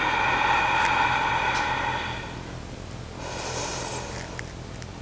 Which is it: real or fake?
real